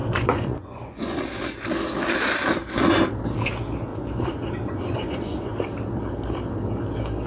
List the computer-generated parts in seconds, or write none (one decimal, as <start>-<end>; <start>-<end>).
0.0-1.2; 3.9-5.6